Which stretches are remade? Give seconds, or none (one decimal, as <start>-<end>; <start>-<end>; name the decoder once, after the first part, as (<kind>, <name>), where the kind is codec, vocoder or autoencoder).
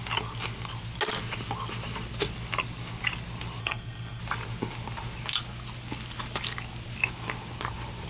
3.6-4.2 (codec, SNAC)